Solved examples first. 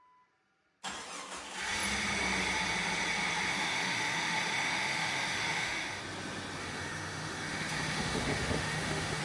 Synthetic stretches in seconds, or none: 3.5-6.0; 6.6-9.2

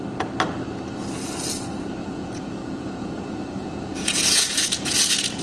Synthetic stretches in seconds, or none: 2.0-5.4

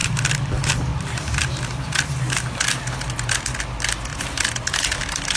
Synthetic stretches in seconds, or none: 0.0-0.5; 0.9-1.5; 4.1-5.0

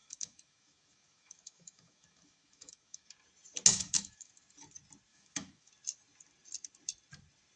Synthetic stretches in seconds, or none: 0.0-3.1; 3.7-4.3; 5.1-5.7

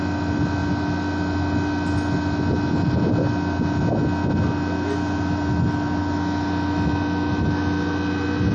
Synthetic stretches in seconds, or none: none

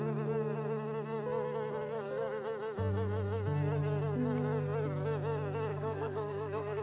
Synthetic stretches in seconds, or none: 5.7-6.8

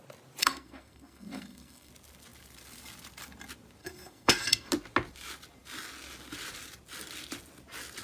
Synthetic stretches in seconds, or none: 0.4-1.9; 3.8-4.7

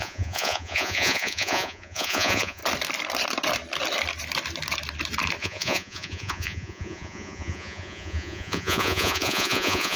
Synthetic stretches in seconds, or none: 0.0-2.6; 5.4-10.0